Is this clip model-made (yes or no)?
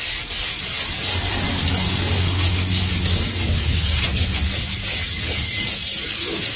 yes